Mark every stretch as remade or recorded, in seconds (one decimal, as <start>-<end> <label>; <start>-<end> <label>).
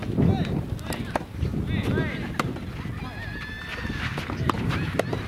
0.0-1.0 recorded; 1.0-1.5 remade; 1.5-4.6 recorded; 4.6-5.3 remade